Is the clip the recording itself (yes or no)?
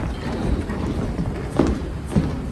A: yes